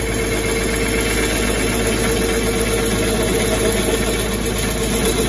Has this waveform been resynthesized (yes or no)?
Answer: no